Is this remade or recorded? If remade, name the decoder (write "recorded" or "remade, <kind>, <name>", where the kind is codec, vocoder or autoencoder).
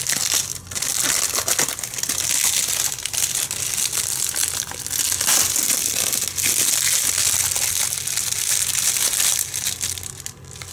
recorded